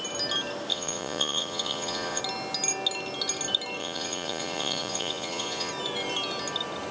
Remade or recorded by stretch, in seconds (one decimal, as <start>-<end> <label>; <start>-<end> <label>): 0.0-0.7 recorded; 0.7-2.2 remade; 2.2-3.8 recorded; 3.8-5.7 remade; 5.7-6.9 recorded